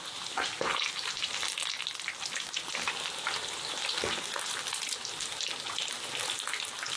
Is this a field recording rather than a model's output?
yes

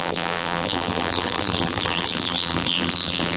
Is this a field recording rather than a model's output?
no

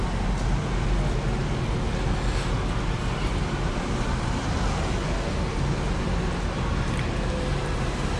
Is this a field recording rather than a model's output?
yes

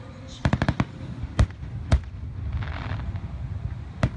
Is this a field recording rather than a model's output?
yes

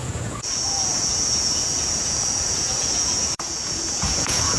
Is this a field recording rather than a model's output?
no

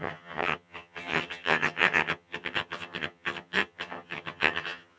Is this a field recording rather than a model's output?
no